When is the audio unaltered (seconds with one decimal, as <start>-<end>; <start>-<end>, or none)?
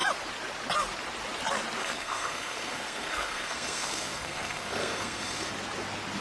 0.0-1.8; 5.5-6.2